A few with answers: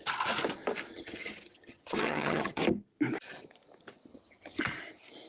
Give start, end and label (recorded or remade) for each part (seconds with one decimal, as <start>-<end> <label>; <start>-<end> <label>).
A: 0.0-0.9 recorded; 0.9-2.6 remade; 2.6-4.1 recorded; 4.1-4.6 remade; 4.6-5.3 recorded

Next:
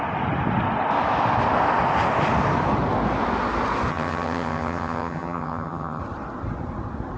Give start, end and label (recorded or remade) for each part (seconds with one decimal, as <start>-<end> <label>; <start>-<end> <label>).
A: 0.0-3.9 recorded; 3.9-6.0 remade; 6.0-7.2 recorded

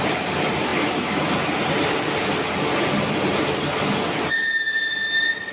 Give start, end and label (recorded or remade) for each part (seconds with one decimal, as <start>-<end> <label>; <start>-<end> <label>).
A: 0.0-5.5 recorded

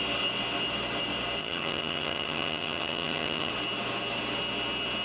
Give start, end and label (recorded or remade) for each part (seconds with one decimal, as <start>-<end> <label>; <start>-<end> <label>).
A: 0.0-1.4 recorded; 1.4-3.5 remade; 3.5-5.0 recorded

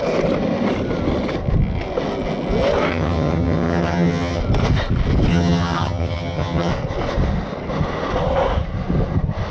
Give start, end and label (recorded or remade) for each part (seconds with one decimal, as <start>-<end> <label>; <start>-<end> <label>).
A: 0.0-2.9 recorded; 2.9-4.4 remade; 4.4-5.3 recorded; 5.3-6.7 remade; 6.7-9.5 recorded